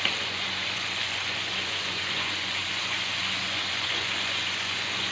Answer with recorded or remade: remade